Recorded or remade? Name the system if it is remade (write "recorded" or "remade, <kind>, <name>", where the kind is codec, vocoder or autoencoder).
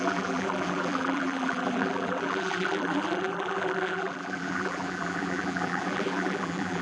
remade, vocoder, BigVGAN v2